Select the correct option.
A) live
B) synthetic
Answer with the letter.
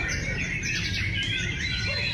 A